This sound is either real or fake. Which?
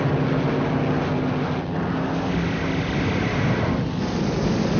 real